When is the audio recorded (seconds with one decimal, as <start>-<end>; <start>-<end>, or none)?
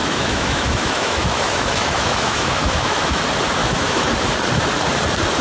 3.2-3.6; 4.1-5.4